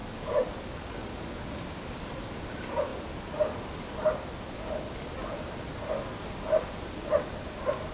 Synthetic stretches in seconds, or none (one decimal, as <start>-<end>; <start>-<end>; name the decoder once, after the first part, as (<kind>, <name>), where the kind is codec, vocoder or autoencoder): 0.0-1.3 (codec, DAC)